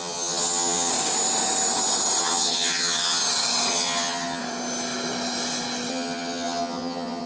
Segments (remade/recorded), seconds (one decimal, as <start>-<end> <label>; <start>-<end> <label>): 0.0-0.9 remade; 0.9-2.2 recorded; 2.2-3.2 remade; 3.2-3.7 recorded; 3.7-4.4 remade; 4.4-5.9 recorded; 5.9-7.3 remade